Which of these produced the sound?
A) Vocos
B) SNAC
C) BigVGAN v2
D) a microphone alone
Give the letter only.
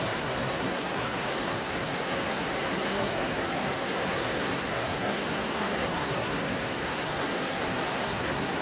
B